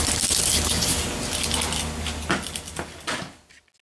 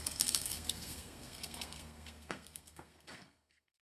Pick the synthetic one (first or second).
second